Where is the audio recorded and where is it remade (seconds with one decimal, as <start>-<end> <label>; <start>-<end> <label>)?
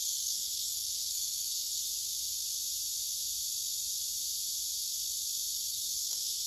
0.0-1.8 remade; 1.8-5.7 recorded; 5.7-6.5 remade